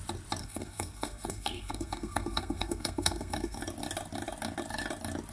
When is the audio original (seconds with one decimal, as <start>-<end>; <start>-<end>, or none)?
0.0-0.4; 3.6-5.3